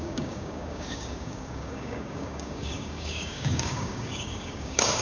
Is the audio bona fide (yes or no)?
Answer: no